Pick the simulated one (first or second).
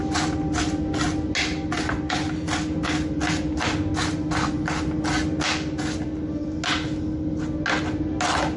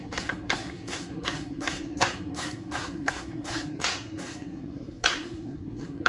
second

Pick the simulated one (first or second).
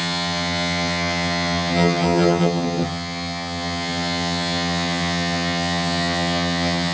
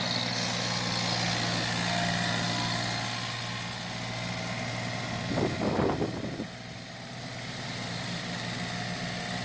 first